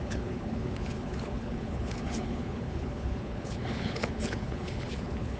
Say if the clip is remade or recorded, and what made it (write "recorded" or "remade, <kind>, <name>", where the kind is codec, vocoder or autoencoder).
remade, codec, HILCodec